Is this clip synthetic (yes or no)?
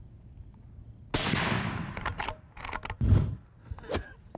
no